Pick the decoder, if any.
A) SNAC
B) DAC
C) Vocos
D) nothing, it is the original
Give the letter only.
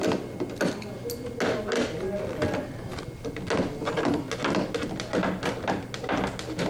D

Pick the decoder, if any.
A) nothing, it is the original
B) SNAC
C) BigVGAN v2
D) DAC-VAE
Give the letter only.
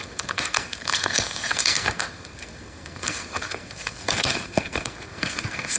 B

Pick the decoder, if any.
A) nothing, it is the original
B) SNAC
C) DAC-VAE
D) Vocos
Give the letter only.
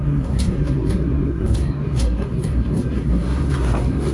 B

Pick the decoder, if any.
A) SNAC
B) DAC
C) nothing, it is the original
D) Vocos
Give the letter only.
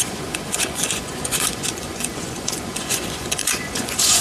D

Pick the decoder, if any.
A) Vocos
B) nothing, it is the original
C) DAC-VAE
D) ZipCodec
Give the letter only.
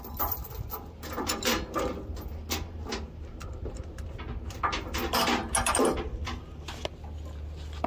B